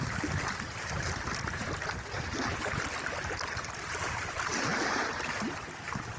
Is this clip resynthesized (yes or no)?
no